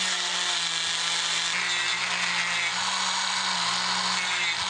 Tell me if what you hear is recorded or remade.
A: recorded